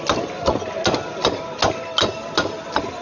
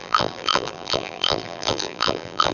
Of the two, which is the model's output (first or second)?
second